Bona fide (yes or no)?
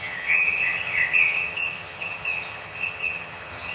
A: no